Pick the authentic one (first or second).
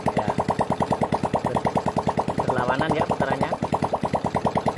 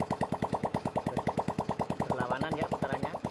first